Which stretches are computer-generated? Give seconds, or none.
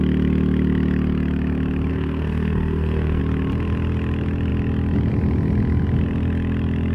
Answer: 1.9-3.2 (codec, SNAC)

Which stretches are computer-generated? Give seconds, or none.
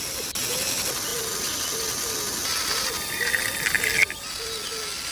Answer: none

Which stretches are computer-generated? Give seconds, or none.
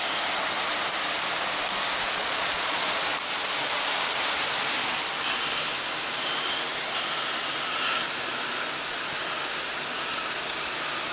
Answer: 2.2-2.9 (vocoder, Vocos)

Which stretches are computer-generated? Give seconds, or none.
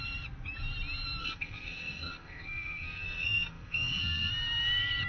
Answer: 1.2-4.3 (codec, SNAC)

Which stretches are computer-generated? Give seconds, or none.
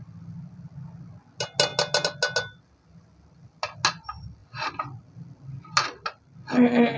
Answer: none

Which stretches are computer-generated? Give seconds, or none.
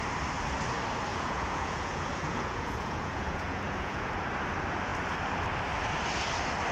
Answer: 1.1-4.1 (vocoder, Vocos)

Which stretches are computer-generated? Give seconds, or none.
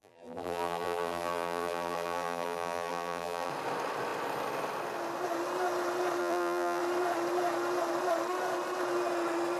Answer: 0.0-3.5 (vocoder, BigVGAN v2); 6.2-6.8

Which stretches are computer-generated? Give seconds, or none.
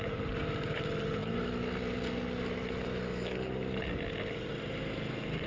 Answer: none